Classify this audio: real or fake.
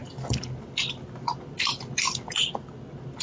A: real